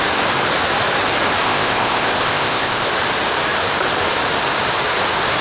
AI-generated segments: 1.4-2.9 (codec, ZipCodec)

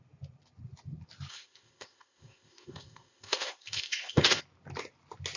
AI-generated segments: 1.3-4.4 (codec, ZipCodec)

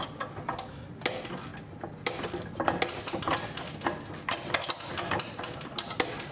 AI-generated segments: none

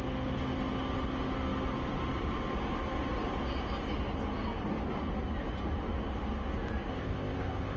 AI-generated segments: 6.9-7.8 (codec, ZipCodec)